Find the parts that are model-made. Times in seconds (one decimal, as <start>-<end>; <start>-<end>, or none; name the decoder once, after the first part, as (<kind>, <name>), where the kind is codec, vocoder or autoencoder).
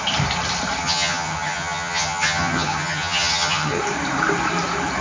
0.8-3.8 (vocoder, HiFi-GAN)